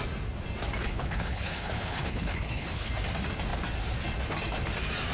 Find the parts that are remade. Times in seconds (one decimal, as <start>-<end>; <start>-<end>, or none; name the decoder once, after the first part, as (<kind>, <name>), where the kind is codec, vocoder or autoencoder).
0.8-2.9 (codec, HILCodec)